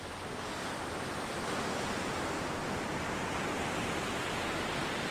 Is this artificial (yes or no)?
no